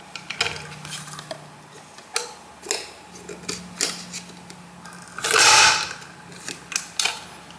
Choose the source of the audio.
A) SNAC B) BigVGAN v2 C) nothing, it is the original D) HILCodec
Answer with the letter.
C